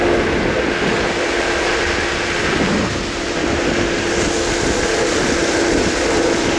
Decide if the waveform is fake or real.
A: real